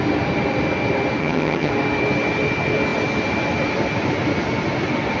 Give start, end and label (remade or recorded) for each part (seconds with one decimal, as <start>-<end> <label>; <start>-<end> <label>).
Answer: 0.0-1.2 recorded; 1.2-1.7 remade; 1.7-5.2 recorded